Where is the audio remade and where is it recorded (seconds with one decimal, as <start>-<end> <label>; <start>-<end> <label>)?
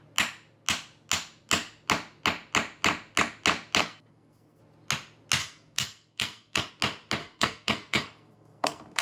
0.0-3.8 recorded; 3.8-4.6 remade; 4.6-5.4 recorded; 5.4-6.7 remade; 6.7-7.2 recorded; 7.2-9.0 remade